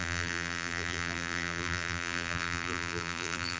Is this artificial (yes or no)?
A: yes